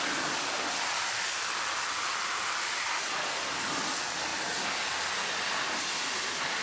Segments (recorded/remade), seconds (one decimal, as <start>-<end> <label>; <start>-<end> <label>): 0.0-6.6 recorded